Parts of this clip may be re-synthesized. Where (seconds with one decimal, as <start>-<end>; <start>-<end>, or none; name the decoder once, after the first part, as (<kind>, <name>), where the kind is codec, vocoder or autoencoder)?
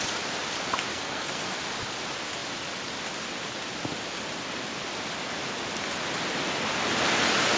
0.9-1.6 (codec, SNAC)